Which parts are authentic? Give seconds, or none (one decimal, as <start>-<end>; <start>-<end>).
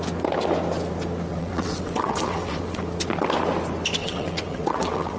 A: 0.0-1.3; 2.8-4.0